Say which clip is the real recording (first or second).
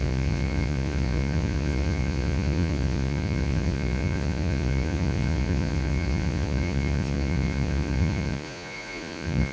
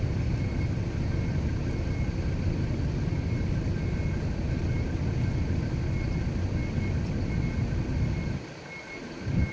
second